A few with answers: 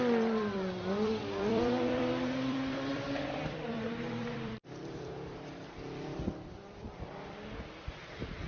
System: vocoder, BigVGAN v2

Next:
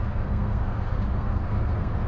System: codec, SNAC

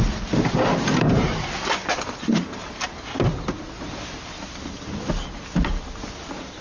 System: none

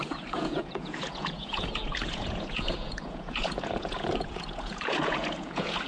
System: vocoder, Vocos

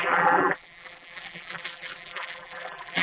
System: vocoder, BigVGAN v2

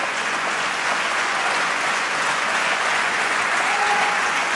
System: vocoder, Vocos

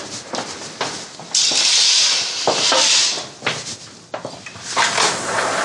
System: none